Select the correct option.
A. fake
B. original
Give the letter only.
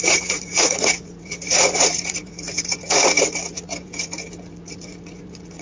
A